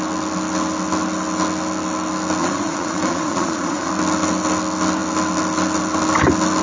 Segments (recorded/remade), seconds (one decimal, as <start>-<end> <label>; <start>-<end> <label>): 0.0-2.4 recorded; 2.4-3.9 remade; 3.9-6.6 recorded